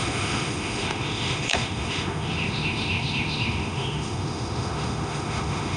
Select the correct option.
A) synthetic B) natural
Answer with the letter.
A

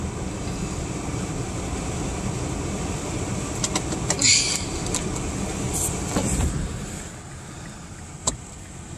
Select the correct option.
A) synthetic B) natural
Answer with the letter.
B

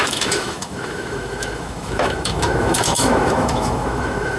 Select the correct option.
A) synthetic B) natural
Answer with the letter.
A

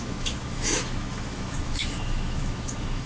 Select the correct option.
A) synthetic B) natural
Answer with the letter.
A